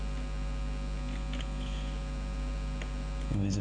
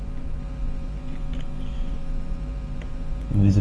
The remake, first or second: second